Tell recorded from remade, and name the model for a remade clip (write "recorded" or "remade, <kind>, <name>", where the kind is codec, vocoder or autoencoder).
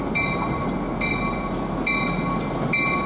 recorded